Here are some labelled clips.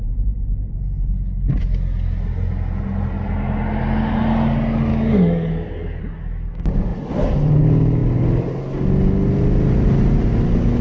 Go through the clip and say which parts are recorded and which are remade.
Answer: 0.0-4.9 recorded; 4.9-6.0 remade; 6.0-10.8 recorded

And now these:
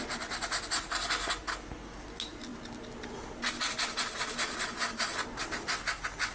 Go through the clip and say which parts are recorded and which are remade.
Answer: 0.0-6.3 recorded

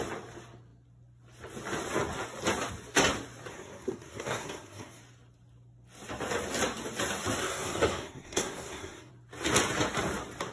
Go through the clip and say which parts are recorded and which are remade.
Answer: 0.0-3.5 recorded; 3.5-5.0 remade; 5.0-7.4 recorded; 7.4-9.1 remade; 9.1-10.5 recorded

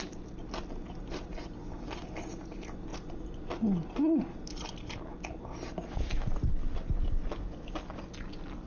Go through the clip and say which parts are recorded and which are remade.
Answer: 0.0-8.7 recorded